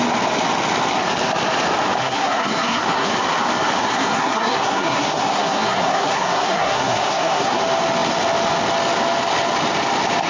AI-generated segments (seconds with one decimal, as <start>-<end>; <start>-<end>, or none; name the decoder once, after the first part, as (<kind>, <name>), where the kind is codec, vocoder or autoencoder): 2.0-3.1 (codec, SNAC); 3.8-7.6